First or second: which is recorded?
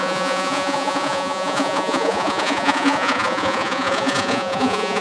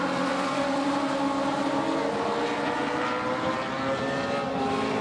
second